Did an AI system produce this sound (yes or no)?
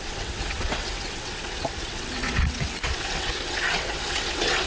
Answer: yes